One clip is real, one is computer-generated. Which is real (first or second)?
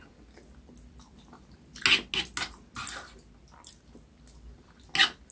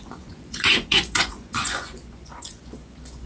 first